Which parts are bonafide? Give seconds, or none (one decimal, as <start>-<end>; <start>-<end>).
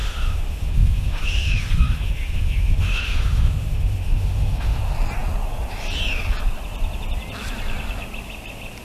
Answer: 4.8-8.8